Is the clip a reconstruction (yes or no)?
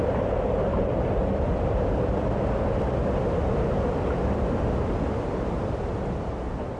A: no